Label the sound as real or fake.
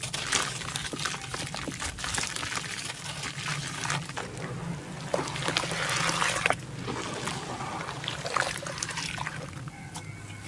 real